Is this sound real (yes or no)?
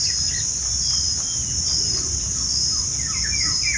yes